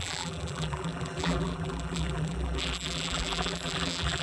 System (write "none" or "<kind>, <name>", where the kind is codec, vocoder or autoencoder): vocoder, BigVGAN v2